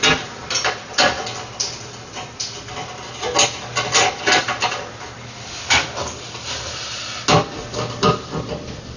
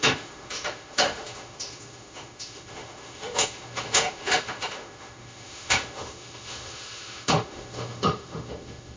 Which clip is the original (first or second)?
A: first